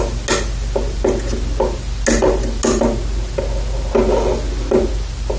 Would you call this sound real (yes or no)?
yes